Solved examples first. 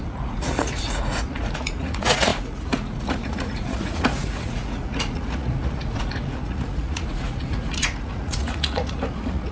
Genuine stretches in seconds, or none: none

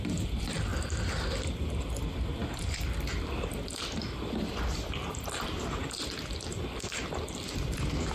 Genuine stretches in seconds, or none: 0.7-1.6